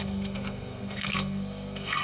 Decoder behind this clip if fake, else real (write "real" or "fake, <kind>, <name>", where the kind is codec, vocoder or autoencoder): fake, codec, SNAC